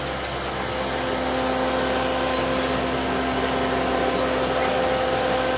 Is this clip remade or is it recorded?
recorded